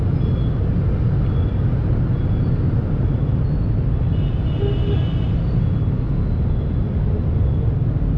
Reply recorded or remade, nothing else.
recorded